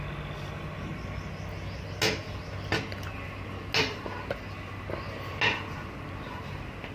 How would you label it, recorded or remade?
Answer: recorded